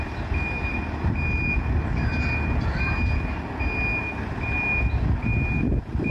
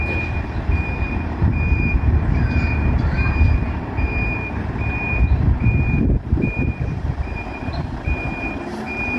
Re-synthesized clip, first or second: second